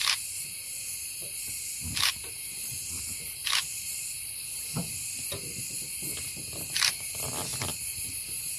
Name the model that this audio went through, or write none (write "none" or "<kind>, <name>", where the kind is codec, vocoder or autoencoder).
none